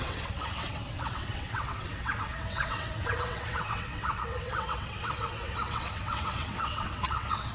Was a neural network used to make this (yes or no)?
yes